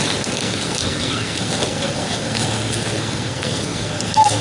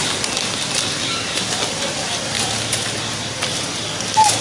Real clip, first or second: second